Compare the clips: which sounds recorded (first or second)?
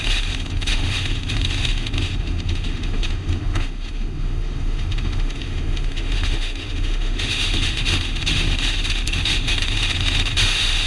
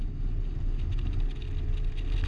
second